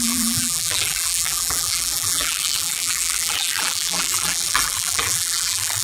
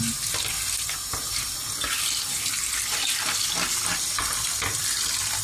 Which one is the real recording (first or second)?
second